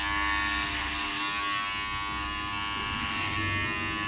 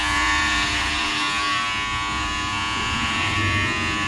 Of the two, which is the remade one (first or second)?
second